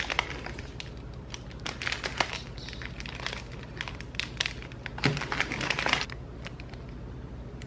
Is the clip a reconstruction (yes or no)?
no